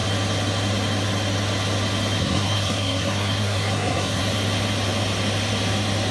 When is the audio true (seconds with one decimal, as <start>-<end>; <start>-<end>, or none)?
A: 0.0-2.2; 4.2-6.1